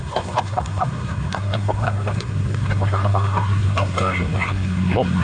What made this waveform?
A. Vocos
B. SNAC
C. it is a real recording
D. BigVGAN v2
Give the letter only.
B